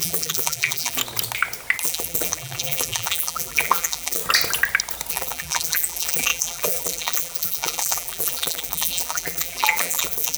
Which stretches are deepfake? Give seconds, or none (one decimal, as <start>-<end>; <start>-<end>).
0.0-1.0; 1.8-4.2; 5.1-10.4